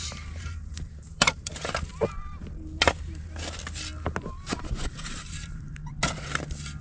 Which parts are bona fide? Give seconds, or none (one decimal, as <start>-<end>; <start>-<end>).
1.9-4.2; 5.9-6.8